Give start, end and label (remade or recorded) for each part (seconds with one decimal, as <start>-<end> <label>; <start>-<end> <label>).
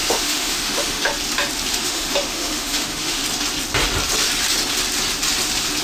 0.0-1.1 remade; 1.1-1.7 recorded; 1.7-3.2 remade; 3.2-5.8 recorded